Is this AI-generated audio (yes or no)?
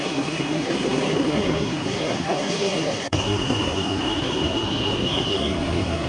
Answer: yes